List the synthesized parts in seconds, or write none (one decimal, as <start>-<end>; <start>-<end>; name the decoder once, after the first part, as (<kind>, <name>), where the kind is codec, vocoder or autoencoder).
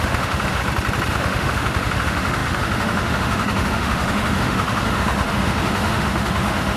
0.0-0.6 (autoencoder, DAC-VAE); 1.1-6.8